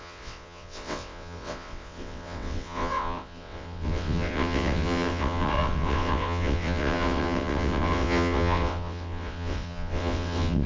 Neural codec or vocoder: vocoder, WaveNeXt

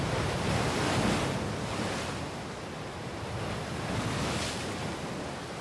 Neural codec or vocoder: none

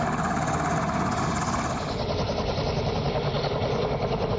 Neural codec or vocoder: none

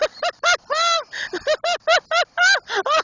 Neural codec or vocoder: none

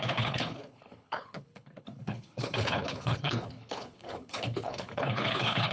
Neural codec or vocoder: codec, HILCodec